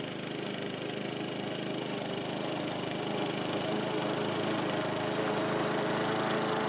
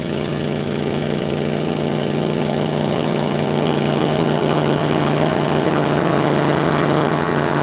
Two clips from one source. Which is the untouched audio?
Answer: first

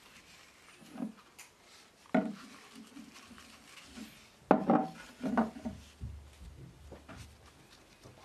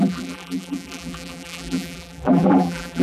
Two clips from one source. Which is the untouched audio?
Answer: first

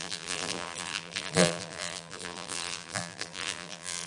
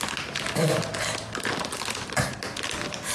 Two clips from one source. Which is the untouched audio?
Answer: second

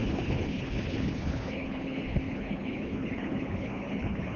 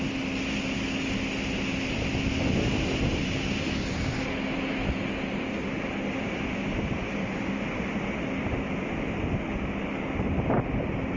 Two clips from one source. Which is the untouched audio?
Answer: second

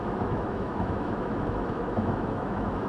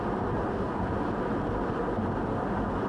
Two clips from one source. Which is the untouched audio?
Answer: second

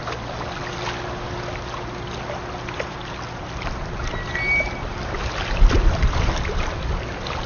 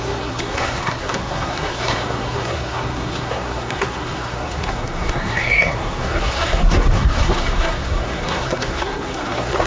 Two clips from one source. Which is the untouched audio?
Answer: first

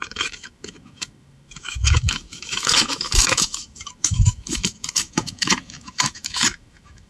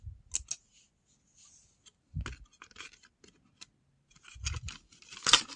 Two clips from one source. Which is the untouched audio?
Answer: second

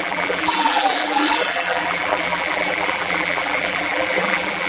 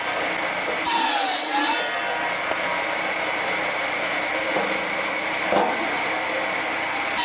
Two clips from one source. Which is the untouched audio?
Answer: second